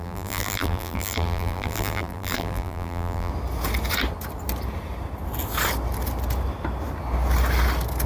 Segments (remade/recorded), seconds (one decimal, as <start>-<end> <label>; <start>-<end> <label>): 0.0-3.3 remade; 3.3-8.1 recorded